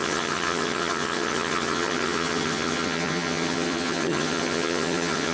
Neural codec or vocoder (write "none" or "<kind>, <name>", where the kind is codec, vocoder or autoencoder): vocoder, HiFi-GAN